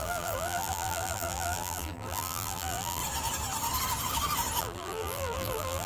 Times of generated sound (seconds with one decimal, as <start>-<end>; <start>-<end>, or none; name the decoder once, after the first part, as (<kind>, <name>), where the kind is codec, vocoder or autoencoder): 0.0-3.0 (vocoder, BigVGAN v2); 4.6-5.9